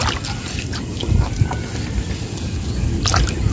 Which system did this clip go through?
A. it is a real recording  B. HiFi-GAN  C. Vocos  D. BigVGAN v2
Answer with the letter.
A